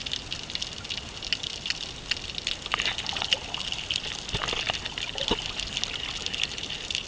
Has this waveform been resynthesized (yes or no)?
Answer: no